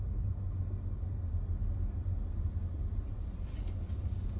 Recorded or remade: recorded